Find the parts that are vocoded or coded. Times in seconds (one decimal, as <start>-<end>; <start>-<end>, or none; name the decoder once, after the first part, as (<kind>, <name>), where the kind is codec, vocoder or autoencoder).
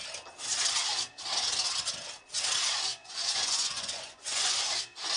2.9-4.6 (vocoder, Vocos)